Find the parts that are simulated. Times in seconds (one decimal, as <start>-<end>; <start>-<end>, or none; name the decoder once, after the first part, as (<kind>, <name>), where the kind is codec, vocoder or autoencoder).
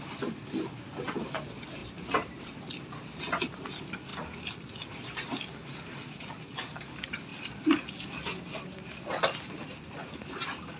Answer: 1.8-2.6 (vocoder, BigVGAN v2)